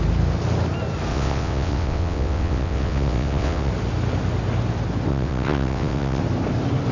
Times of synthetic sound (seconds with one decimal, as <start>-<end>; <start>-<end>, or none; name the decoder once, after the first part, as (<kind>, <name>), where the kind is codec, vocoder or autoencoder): 1.1-3.7 (vocoder, WaveNeXt); 5.1-6.2

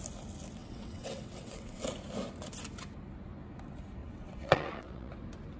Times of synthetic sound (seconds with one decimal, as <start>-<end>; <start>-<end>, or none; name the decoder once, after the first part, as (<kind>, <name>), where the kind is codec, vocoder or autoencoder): 0.6-1.8 (vocoder, WaveNeXt); 4.0-5.1